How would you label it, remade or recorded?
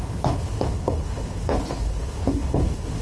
remade